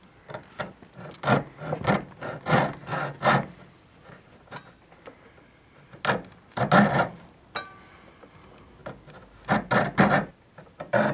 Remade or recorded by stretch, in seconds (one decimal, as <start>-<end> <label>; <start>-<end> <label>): 0.0-11.1 recorded